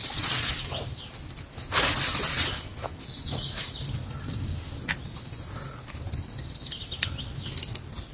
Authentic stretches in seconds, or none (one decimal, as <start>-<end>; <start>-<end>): 0.5-8.1